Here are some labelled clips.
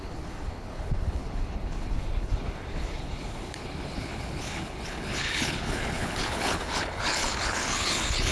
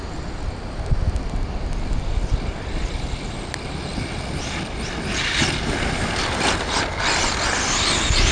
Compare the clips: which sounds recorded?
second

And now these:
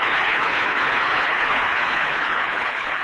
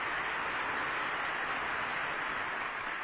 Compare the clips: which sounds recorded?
second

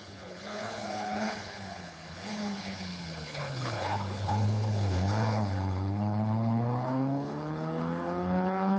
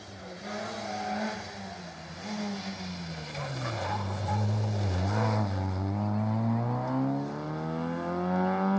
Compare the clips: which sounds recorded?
second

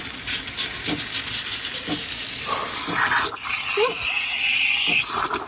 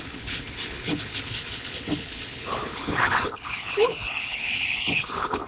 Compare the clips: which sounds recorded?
first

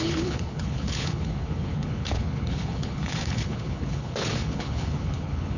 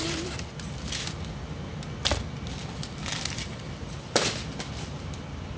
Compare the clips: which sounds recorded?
second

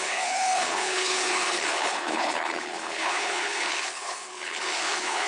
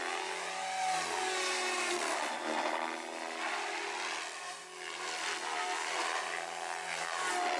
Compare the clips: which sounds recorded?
second